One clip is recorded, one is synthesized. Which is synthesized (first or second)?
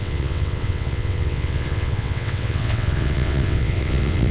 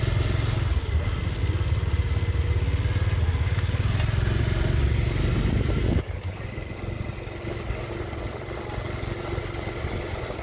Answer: first